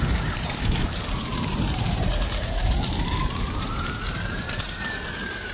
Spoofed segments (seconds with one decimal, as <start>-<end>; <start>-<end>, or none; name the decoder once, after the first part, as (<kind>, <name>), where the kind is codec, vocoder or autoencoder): 1.3-4.6 (vocoder, BigVGAN v2)